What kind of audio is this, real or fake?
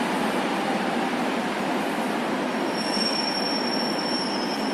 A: real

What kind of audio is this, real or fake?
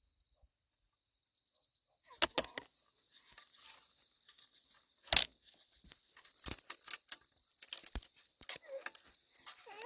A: real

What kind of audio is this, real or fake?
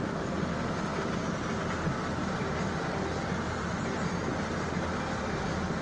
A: real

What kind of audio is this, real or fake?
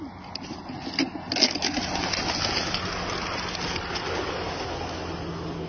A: real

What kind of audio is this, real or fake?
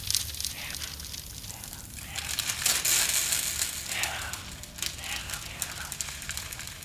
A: real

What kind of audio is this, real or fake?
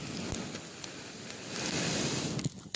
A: real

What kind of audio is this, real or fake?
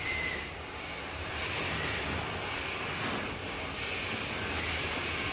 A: real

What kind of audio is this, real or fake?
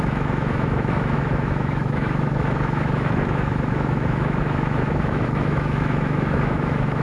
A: fake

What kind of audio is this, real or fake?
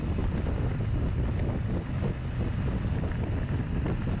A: real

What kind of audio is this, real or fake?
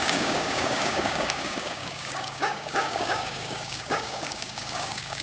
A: fake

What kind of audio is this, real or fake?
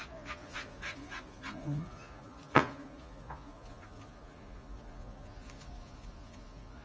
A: fake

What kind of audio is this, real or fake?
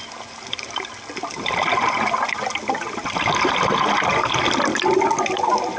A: real